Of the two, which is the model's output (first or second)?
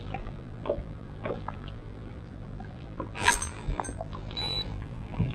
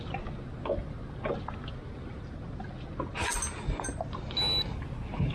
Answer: first